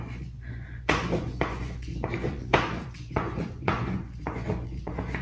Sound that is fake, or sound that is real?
fake